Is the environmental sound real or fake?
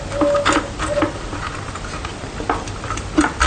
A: real